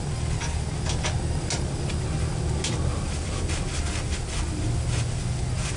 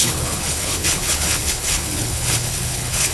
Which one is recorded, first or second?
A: first